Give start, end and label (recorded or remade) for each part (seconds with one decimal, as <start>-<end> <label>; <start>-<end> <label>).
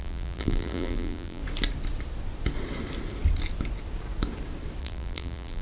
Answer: 0.0-1.4 remade; 1.4-4.8 recorded; 4.8-5.6 remade